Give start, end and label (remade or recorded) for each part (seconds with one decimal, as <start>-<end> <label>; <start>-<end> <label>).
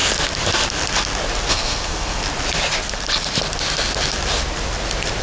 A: 0.0-1.5 recorded; 1.5-2.2 remade; 2.2-5.2 recorded